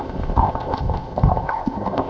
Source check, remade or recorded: remade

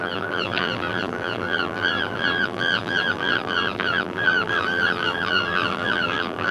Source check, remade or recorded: remade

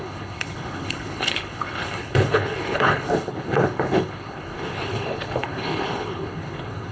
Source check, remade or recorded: remade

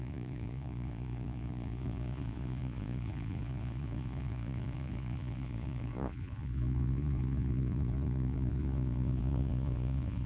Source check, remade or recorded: remade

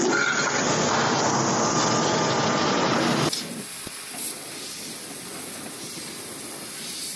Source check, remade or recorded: recorded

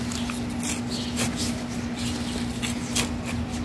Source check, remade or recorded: recorded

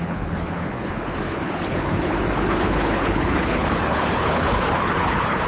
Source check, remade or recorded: remade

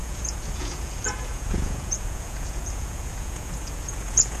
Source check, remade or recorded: remade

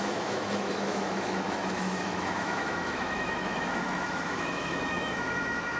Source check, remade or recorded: remade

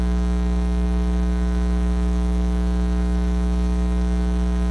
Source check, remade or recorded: remade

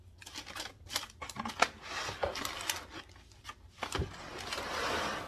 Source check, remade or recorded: recorded